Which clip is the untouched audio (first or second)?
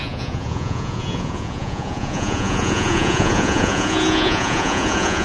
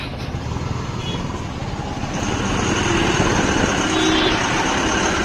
second